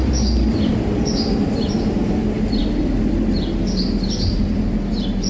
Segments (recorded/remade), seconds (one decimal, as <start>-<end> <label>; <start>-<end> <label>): 0.0-5.3 recorded